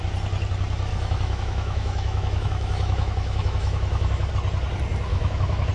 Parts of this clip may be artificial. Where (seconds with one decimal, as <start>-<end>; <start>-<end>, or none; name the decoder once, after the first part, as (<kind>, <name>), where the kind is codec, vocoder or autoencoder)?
0.9-4.3 (autoencoder, DAC-VAE); 5.1-5.7